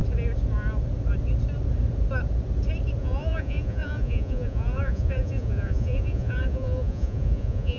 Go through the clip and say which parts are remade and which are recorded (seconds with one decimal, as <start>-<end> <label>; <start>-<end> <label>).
0.0-3.0 recorded; 3.0-7.8 remade